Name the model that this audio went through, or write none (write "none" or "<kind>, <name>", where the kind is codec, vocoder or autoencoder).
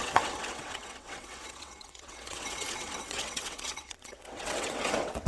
vocoder, WaveNeXt